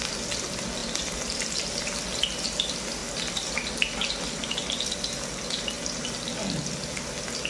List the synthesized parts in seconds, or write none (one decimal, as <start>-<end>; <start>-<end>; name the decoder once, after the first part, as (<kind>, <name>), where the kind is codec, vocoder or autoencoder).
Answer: 0.8-2.0 (vocoder, BigVGAN v2)